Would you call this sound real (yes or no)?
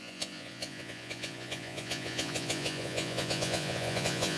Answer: no